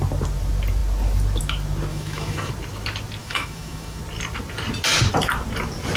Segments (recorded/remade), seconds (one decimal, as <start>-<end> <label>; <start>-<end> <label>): 0.0-1.9 recorded; 1.9-2.5 remade; 2.5-3.2 recorded; 3.2-4.0 remade; 4.0-6.0 recorded